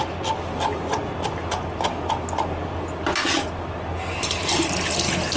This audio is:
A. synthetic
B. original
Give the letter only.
B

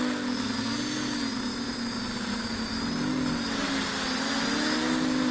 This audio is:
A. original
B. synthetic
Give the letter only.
A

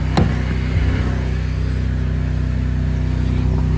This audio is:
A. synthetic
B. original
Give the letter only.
B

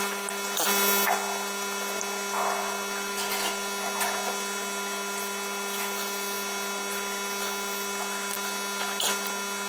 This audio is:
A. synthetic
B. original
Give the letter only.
B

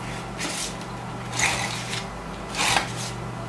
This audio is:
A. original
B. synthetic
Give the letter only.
A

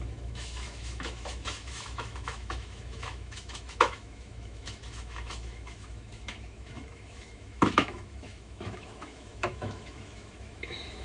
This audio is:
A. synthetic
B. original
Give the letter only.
A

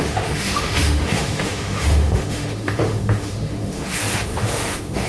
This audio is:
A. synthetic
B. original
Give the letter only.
A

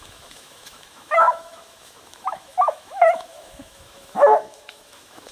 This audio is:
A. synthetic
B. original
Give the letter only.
A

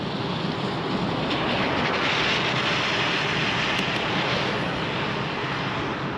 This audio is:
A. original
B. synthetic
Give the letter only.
A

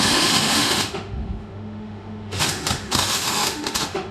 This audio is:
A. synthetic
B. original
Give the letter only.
A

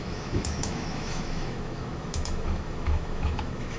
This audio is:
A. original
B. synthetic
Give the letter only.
B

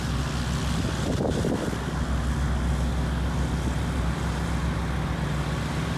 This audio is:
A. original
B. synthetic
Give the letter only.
A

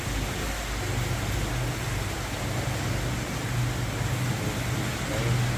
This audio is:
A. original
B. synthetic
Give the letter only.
A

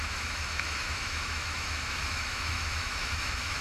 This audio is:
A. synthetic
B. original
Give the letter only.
A